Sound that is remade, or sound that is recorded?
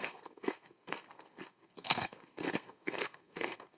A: remade